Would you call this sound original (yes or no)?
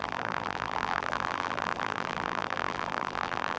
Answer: no